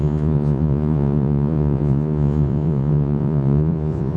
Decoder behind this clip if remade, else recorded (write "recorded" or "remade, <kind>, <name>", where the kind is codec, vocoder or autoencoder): remade, vocoder, Vocos